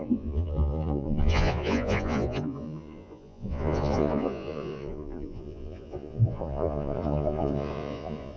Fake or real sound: fake